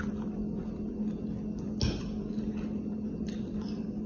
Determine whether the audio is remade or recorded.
recorded